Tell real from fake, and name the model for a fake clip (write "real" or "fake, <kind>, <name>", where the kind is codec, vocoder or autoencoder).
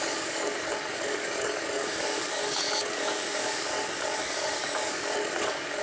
fake, codec, DAC